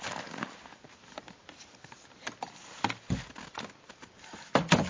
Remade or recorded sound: remade